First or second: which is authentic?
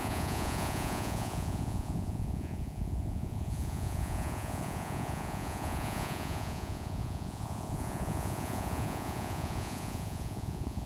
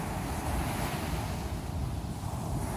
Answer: second